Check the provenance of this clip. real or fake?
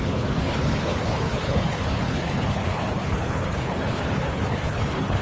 fake